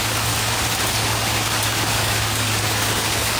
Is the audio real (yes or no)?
no